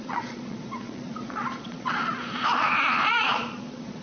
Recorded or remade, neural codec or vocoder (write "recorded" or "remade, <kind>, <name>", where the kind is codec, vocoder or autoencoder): remade, vocoder, Vocos